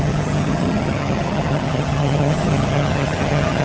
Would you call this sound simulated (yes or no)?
yes